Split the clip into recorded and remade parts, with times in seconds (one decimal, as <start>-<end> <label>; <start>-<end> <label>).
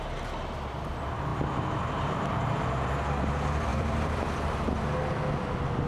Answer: 0.0-1.3 recorded; 1.3-2.3 remade; 2.3-3.7 recorded; 3.7-4.6 remade; 4.6-5.9 recorded